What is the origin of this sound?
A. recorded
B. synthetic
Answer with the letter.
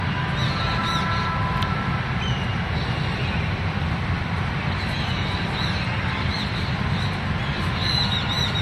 A